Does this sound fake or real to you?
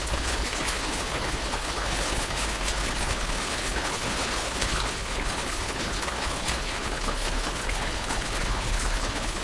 fake